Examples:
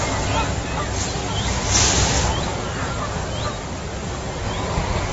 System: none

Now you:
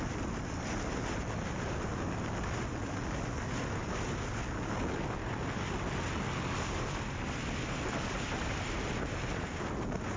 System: none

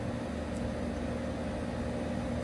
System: none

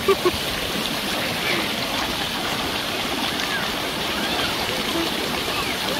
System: vocoder, BigVGAN v2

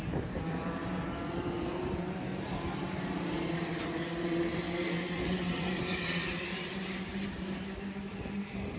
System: vocoder, BigVGAN v2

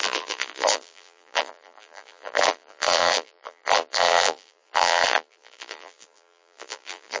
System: vocoder, BigVGAN v2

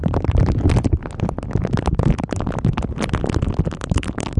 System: vocoder, BigVGAN v2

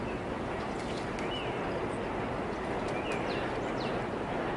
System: none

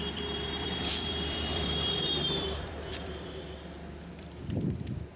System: vocoder, BigVGAN v2